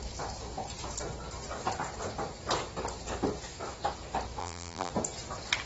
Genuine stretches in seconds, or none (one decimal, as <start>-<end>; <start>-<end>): 0.0-4.4; 4.9-5.7